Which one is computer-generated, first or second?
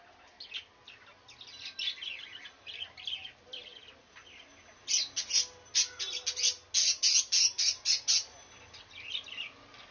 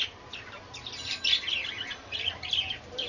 second